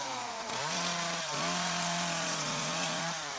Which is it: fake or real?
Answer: fake